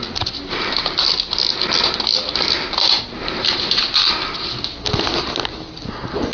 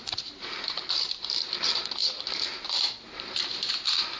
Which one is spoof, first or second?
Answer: second